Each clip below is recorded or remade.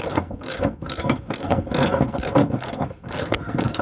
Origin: remade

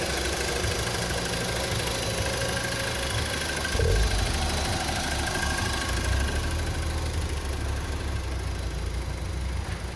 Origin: recorded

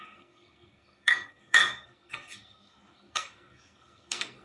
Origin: remade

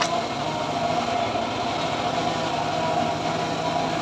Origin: recorded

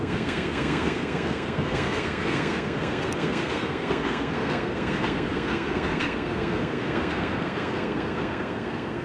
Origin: remade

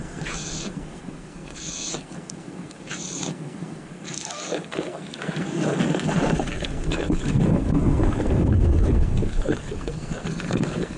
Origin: remade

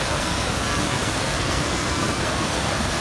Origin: remade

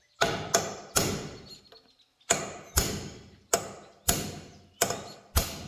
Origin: recorded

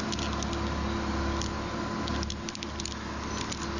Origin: recorded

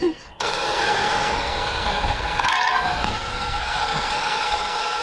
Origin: remade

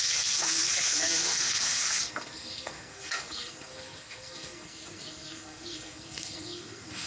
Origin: remade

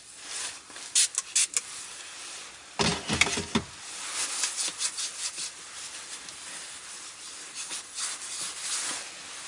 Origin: recorded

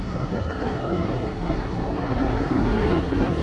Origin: remade